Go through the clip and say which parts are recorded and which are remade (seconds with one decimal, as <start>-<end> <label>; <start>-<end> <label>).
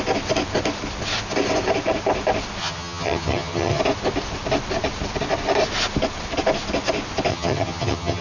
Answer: 0.0-2.6 recorded; 2.6-3.8 remade; 3.8-7.3 recorded; 7.3-8.2 remade